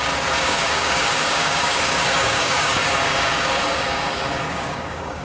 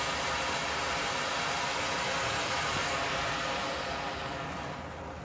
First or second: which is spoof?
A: first